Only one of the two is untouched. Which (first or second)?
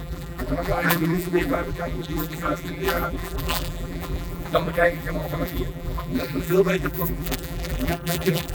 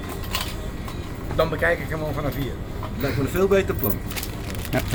second